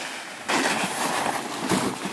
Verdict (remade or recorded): recorded